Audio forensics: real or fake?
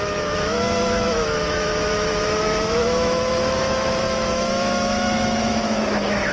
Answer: fake